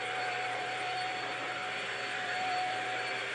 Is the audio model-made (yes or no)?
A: yes